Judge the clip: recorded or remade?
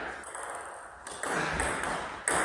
recorded